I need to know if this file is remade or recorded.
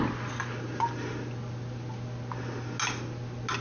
recorded